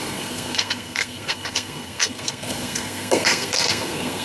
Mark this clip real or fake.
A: fake